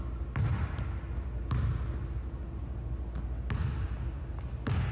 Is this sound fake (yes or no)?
no